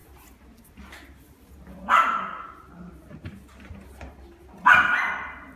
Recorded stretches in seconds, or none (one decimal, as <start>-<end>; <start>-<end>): 0.0-5.6